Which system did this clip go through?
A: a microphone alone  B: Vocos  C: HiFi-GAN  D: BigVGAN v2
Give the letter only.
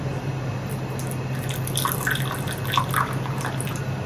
A